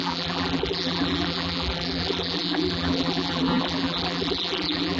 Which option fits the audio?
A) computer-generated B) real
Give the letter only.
A